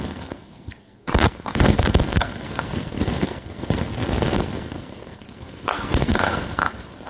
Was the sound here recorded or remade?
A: remade